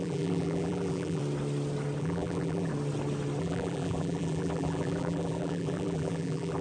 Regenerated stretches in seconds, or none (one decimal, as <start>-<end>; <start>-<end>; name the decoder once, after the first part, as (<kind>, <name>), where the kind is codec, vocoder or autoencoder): 0.0-1.2 (vocoder, BigVGAN v2); 2.0-2.7; 3.4-6.6